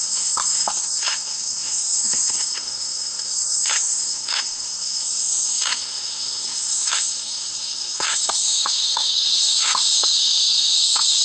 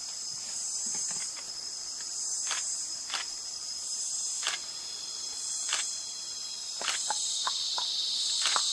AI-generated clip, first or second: first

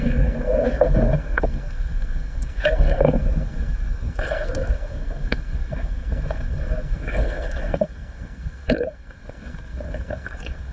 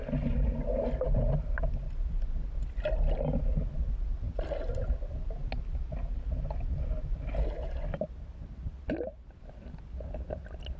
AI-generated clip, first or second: first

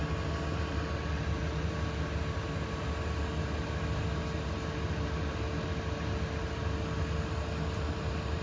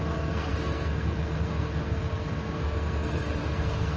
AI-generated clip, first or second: second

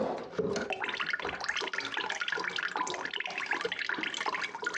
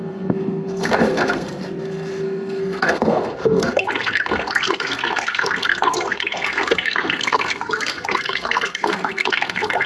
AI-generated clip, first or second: second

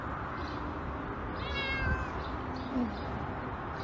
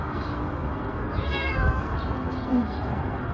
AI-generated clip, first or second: second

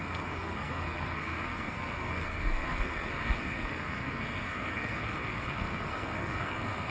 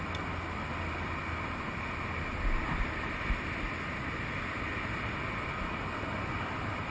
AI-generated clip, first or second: first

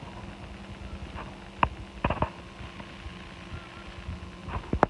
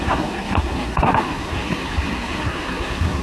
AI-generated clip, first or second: second